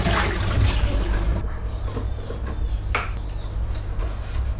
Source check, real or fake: real